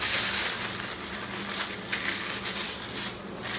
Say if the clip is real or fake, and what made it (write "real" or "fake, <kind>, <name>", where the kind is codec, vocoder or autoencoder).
real